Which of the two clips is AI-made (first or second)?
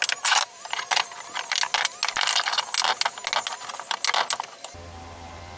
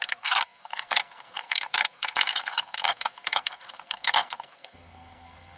second